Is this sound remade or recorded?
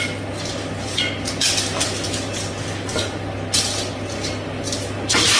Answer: recorded